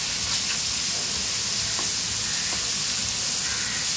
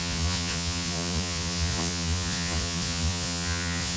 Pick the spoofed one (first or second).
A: second